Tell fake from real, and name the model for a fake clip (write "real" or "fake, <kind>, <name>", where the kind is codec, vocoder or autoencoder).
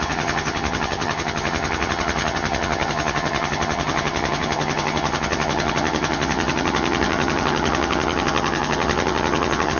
fake, vocoder, HiFi-GAN